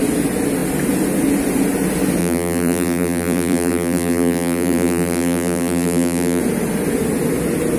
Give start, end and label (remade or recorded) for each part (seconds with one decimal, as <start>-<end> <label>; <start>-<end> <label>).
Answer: 0.0-2.2 recorded; 2.2-6.4 remade; 6.4-7.8 recorded